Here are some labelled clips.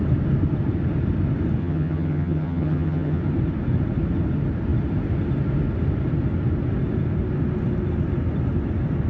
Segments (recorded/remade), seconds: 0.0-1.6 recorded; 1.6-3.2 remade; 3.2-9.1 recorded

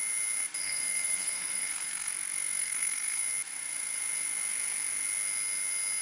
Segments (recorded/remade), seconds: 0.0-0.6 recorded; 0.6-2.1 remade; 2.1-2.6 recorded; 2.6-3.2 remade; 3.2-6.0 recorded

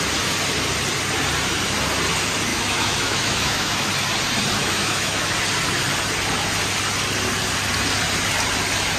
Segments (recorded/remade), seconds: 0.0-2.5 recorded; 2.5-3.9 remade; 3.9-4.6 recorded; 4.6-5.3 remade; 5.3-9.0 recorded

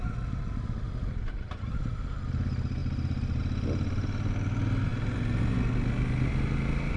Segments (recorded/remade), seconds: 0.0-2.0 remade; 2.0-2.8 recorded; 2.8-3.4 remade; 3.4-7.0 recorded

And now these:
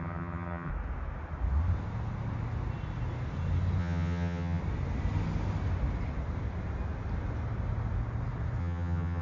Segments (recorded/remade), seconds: 0.0-0.7 remade; 0.7-3.8 recorded; 3.8-4.6 remade; 4.6-8.6 recorded; 8.6-9.2 remade

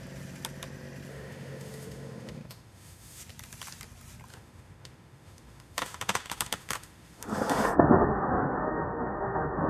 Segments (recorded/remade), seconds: 0.0-1.1 recorded; 1.1-3.2 remade; 3.2-4.3 recorded; 4.3-9.7 remade

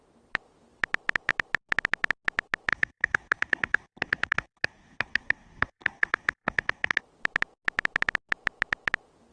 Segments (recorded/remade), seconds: 0.0-2.7 recorded; 2.7-7.0 remade; 7.0-9.3 recorded